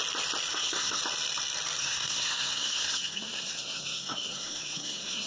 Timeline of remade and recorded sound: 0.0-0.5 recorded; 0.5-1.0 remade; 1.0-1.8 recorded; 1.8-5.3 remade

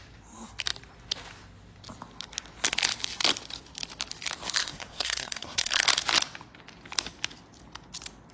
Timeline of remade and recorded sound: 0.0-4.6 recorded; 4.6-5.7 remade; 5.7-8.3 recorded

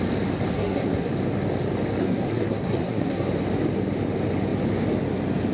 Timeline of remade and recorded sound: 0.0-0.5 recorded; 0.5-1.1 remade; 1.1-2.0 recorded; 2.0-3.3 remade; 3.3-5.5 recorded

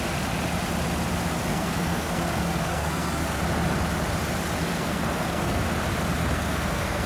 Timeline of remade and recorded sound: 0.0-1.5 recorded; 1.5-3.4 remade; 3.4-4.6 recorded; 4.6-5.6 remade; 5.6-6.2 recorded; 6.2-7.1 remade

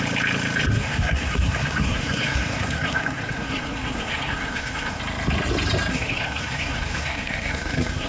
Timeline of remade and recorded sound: 0.0-0.7 recorded; 0.7-5.0 remade; 5.0-5.9 recorded; 5.9-8.1 remade

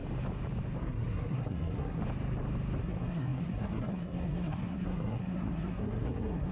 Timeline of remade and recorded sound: 0.0-0.8 recorded; 0.8-2.0 remade; 2.0-2.8 recorded; 2.8-6.5 remade

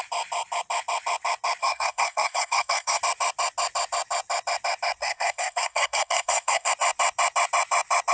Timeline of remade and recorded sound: 0.0-1.6 recorded; 1.6-3.0 remade; 3.0-5.0 recorded; 5.0-6.7 remade; 6.7-8.1 recorded